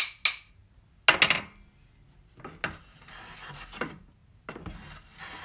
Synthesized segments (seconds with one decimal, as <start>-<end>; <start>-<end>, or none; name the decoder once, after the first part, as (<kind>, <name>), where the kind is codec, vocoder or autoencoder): none